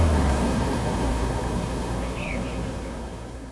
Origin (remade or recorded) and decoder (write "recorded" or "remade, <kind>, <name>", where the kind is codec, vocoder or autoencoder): remade, codec, SNAC